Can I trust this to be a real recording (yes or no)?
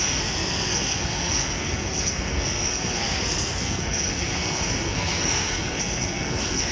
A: no